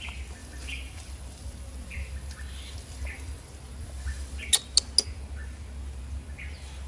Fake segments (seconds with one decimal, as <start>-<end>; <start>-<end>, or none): 0.4-4.5